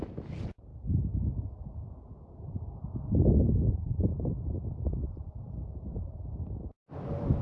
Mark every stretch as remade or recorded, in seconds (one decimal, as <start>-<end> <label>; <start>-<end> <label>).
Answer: 0.0-0.7 remade; 0.7-5.1 recorded; 5.1-7.4 remade